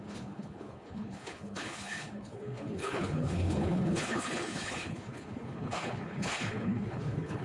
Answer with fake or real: fake